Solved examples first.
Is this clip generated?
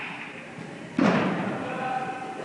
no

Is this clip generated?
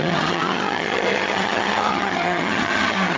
yes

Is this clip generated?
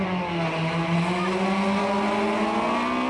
no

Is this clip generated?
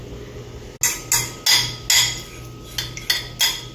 no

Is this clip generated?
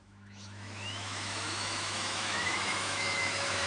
yes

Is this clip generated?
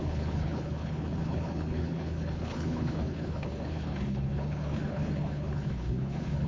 yes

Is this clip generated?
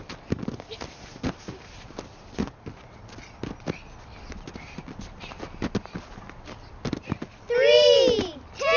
no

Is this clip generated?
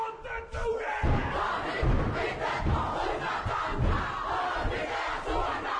no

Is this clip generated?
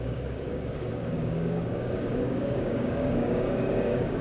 yes